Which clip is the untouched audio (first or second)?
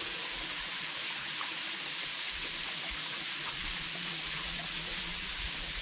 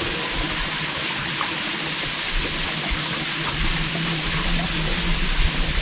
second